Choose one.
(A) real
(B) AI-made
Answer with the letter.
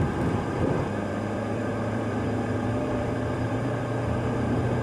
B